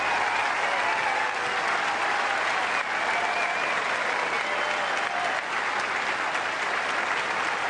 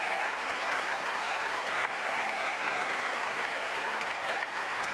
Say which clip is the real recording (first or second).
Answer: first